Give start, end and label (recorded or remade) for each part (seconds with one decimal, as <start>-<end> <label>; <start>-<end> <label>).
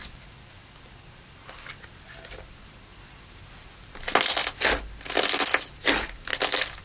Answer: 0.0-6.8 recorded